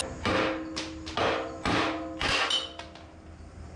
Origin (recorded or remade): recorded